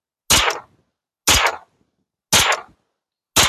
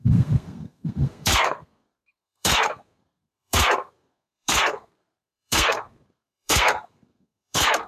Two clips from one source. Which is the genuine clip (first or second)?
first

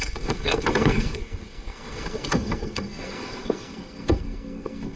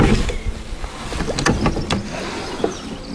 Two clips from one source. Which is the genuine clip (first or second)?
second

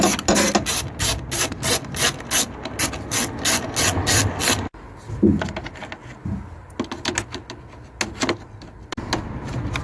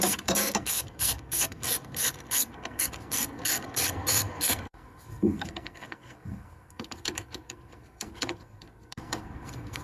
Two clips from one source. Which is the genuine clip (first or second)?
first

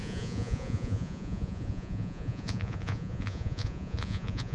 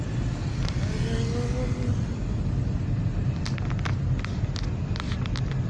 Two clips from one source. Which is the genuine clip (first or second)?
second